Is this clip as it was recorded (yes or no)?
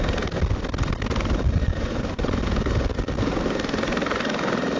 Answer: yes